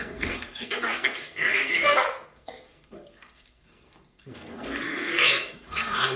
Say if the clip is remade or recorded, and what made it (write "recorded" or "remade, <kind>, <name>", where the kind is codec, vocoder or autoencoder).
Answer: remade, codec, SNAC